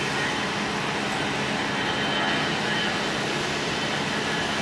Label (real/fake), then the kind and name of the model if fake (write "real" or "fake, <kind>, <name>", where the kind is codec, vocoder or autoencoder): real